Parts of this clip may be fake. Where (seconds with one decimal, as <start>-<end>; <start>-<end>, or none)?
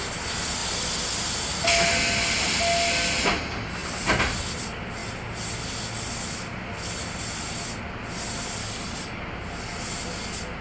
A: 8.6-9.2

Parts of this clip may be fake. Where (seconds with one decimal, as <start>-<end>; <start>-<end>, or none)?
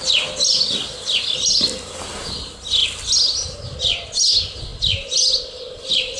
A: none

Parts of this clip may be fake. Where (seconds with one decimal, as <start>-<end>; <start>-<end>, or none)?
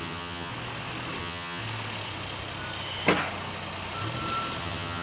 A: 0.0-0.5; 1.2-1.6; 4.6-5.0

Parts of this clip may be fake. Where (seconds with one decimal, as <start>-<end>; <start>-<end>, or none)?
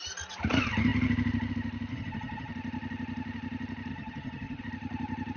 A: 1.9-2.5; 3.9-4.6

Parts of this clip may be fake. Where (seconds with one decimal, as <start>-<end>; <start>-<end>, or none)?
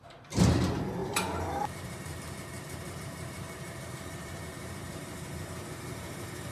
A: 0.0-6.5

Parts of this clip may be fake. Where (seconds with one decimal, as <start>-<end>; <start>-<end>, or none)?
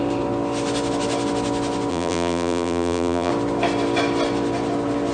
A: 1.9-3.3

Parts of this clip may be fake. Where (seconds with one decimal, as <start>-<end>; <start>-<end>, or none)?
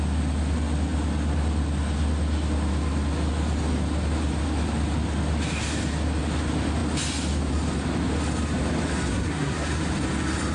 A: 9.1-9.8